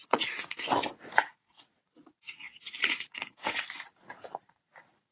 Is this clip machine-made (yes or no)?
yes